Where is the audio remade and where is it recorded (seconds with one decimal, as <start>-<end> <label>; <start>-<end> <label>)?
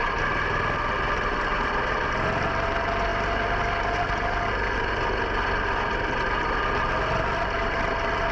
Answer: 0.0-8.3 recorded